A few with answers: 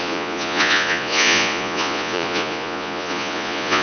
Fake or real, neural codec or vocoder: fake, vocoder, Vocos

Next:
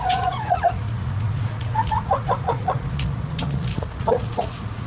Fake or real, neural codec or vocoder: fake, vocoder, Vocos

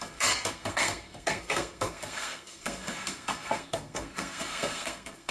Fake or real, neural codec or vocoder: fake, codec, SNAC